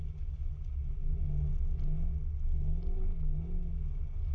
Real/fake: real